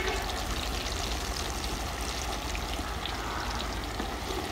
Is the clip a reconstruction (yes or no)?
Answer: no